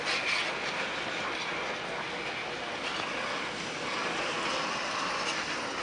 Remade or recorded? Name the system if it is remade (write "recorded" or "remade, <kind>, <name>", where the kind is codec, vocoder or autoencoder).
recorded